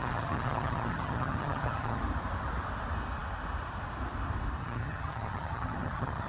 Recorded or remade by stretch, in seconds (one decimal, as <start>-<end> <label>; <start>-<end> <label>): 0.0-2.0 remade; 2.0-4.6 recorded; 4.6-6.3 remade